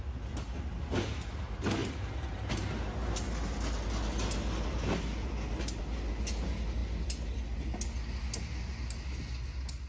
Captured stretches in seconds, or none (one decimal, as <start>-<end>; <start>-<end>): 0.0-9.9